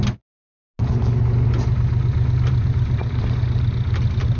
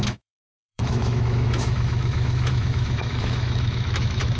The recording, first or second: first